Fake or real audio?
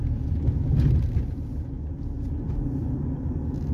real